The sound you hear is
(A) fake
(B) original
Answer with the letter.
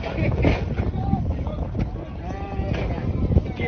B